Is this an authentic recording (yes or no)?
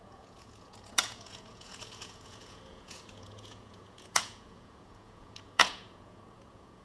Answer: no